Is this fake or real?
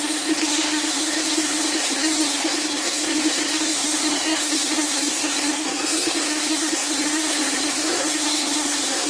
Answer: fake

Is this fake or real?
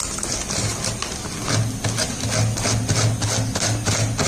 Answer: real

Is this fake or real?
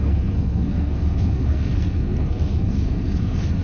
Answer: fake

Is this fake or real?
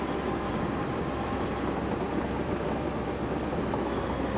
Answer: real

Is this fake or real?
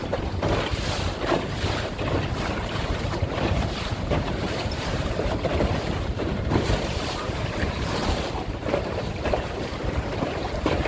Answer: fake